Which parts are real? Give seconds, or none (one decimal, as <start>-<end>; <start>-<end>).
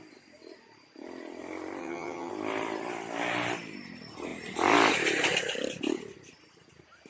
0.0-1.8; 2.3-7.1